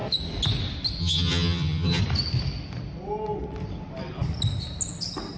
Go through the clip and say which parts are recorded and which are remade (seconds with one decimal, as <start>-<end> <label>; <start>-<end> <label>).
0.0-1.0 recorded; 1.0-2.0 remade; 2.0-5.4 recorded